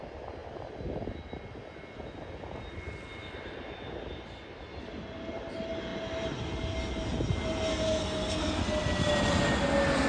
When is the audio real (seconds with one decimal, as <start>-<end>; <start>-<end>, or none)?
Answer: 0.0-7.7; 8.6-10.1